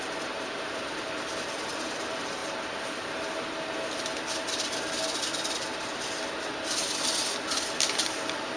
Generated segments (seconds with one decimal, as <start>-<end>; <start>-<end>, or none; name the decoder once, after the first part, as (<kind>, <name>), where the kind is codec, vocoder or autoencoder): none